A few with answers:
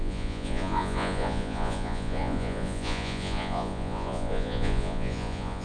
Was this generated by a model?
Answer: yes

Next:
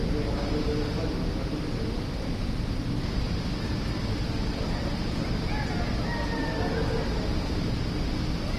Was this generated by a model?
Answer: no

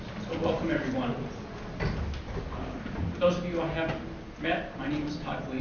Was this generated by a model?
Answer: no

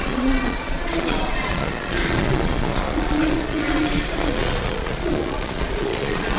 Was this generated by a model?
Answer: yes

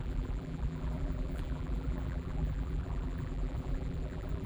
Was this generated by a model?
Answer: yes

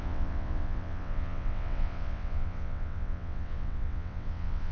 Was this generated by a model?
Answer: yes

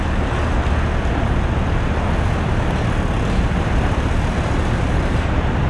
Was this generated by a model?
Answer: no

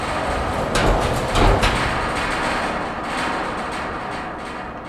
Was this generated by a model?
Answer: no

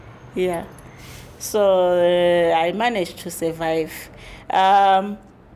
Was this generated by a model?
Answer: no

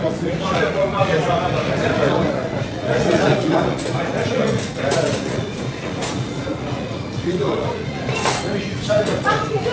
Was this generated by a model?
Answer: yes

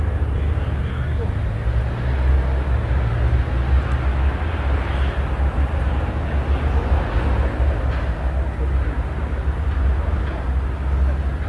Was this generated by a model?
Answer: no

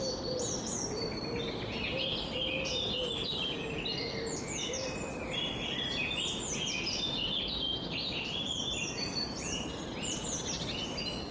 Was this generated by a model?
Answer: no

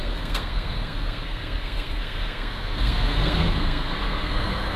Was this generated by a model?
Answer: yes